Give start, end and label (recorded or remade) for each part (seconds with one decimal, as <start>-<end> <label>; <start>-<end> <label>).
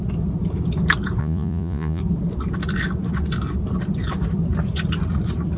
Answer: 0.0-1.2 recorded; 1.2-2.0 remade; 2.0-5.6 recorded